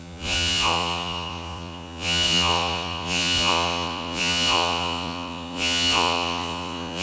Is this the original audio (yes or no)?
no